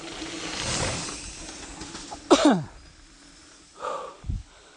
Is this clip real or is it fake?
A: real